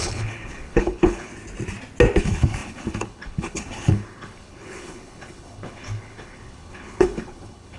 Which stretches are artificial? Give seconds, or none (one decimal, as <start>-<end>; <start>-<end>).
0.0-1.3; 2.2-7.8